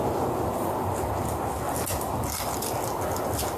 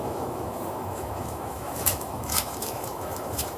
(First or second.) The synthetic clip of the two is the second